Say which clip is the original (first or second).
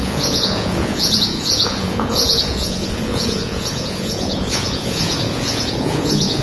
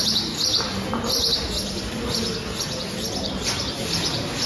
second